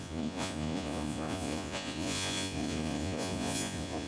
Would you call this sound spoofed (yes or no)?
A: yes